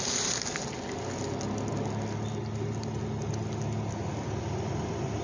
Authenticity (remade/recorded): recorded